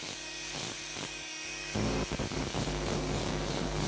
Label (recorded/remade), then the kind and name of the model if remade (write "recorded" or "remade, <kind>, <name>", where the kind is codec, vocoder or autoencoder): remade, codec, DAC